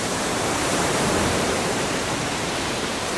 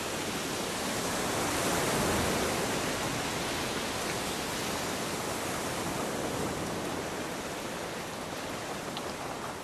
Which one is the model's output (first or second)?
first